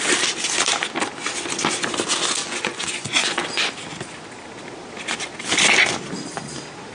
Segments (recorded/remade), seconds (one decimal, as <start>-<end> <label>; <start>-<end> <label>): 0.0-2.4 recorded; 2.4-3.3 remade; 3.3-6.9 recorded